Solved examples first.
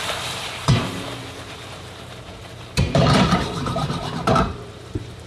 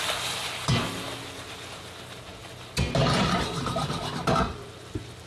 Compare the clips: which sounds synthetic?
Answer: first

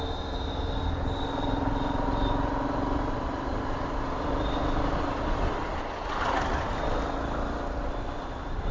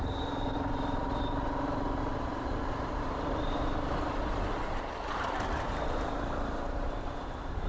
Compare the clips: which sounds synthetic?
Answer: second